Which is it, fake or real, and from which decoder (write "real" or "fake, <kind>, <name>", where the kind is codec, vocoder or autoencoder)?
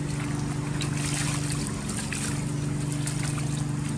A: real